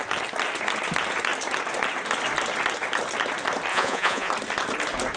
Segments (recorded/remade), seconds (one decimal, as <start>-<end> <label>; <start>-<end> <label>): 0.0-3.7 recorded; 3.7-4.3 remade; 4.3-5.2 recorded